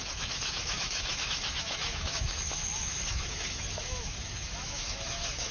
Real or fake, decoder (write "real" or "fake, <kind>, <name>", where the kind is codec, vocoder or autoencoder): fake, autoencoder, DAC-VAE